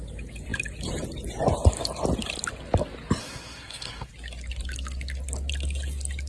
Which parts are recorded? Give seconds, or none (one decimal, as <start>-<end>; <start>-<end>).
0.0-3.2; 4.1-6.3